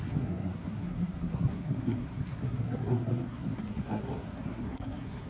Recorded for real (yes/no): no